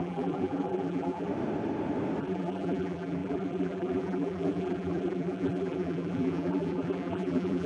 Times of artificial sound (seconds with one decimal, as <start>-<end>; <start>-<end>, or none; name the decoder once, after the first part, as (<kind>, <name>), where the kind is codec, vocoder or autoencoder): 0.0-1.3 (vocoder, BigVGAN v2); 2.2-7.7